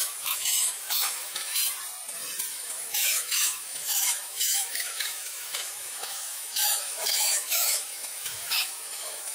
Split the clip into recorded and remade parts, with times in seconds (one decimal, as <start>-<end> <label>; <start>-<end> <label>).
0.0-1.6 remade; 1.6-2.5 recorded; 2.5-9.3 remade